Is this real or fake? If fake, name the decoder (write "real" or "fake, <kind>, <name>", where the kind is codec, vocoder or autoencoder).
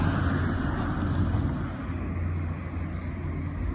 real